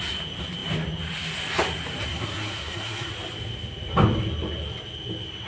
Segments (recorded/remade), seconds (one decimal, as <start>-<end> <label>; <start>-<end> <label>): 0.0-2.1 recorded; 2.1-3.1 remade; 3.1-5.5 recorded